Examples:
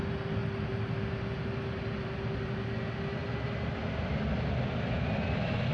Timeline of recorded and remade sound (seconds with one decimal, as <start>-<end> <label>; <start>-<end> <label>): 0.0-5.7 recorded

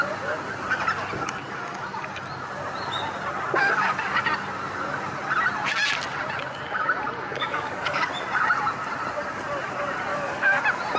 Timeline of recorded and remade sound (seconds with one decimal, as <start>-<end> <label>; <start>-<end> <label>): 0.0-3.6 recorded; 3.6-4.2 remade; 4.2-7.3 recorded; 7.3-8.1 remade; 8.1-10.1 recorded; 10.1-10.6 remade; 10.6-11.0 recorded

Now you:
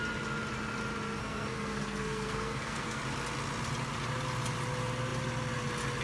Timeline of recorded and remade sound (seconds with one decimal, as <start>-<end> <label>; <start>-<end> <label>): 0.0-1.2 recorded; 1.2-3.0 remade; 3.0-6.0 recorded